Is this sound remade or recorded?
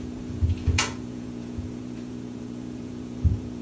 remade